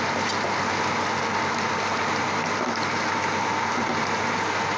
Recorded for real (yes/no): yes